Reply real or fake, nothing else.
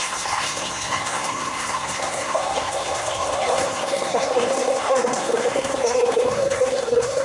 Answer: fake